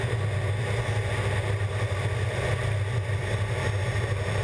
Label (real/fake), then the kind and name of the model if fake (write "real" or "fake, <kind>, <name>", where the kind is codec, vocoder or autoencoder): real